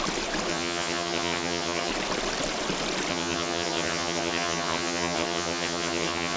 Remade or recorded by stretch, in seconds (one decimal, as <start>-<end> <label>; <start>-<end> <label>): 0.0-0.5 recorded; 0.5-1.9 remade; 1.9-3.1 recorded; 3.1-6.4 remade